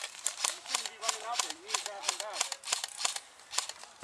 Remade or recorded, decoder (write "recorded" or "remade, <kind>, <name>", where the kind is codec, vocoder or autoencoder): recorded